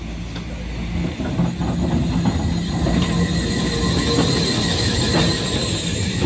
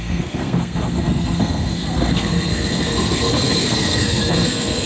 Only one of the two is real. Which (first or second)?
first